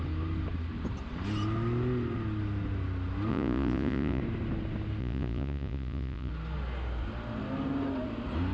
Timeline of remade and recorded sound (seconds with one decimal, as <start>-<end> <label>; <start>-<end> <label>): 0.0-3.3 recorded; 3.3-4.2 remade; 4.2-5.0 recorded; 5.0-6.3 remade; 6.3-8.5 recorded